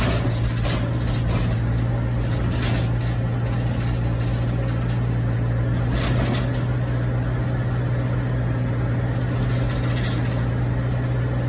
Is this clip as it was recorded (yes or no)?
yes